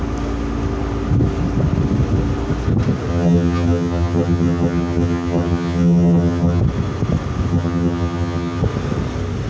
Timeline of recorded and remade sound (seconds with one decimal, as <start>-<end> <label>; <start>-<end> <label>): 0.0-3.1 recorded; 3.1-6.6 remade; 6.6-7.5 recorded; 7.5-8.6 remade; 8.6-9.5 recorded